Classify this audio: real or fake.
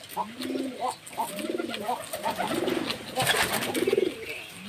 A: real